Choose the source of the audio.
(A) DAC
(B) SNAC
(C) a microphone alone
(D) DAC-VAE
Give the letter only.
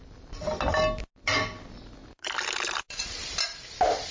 C